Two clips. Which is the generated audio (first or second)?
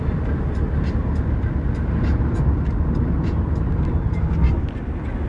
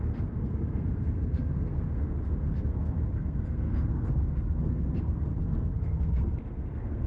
second